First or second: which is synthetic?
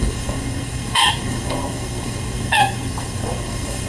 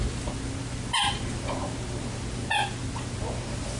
first